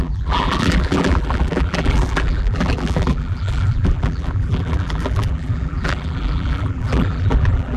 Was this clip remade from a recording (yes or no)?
yes